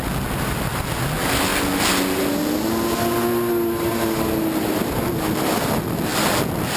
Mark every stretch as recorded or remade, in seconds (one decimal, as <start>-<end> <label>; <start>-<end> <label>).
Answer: 0.0-6.8 recorded